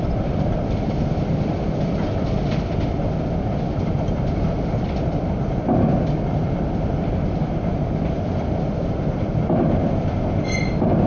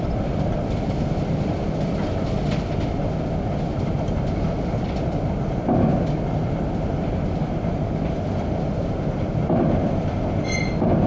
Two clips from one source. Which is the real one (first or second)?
second